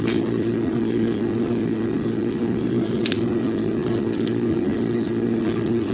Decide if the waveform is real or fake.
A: fake